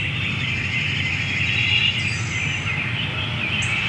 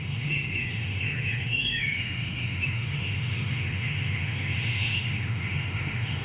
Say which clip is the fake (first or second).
second